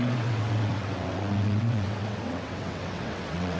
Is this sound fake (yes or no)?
yes